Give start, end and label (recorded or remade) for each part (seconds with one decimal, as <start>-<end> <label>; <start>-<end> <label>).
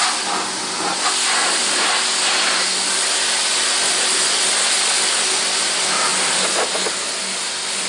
0.0-7.9 recorded